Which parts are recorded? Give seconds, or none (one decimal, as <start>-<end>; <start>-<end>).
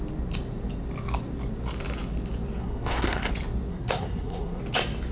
0.0-2.6; 3.3-3.7; 4.6-5.1